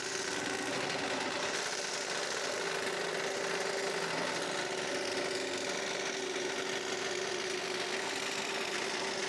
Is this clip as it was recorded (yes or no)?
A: yes